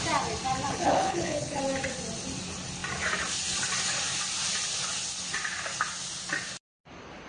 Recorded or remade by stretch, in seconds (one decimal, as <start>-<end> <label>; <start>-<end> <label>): 0.0-0.7 recorded; 0.7-1.6 remade; 1.6-7.3 recorded